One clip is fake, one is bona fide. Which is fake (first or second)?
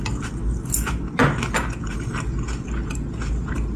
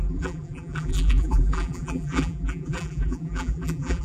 second